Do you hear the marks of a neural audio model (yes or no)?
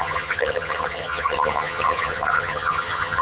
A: yes